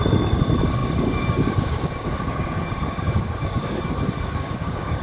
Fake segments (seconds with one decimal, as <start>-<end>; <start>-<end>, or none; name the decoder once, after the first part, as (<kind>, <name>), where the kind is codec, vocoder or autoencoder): 0.0-5.0 (codec, DAC)